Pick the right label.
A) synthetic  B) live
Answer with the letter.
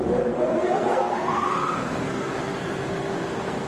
A